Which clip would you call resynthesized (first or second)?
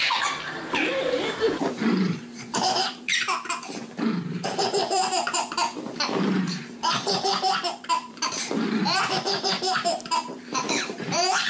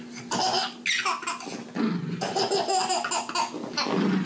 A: first